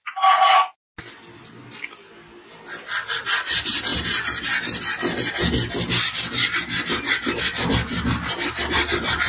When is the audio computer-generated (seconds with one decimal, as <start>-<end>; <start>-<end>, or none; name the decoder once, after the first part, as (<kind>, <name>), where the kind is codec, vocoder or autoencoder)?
none